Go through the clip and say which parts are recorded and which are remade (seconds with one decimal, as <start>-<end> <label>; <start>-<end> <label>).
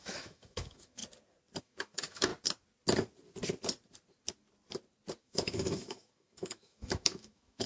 0.0-1.0 remade; 1.0-1.6 recorded; 1.6-2.3 remade; 2.3-5.2 recorded; 5.2-7.7 remade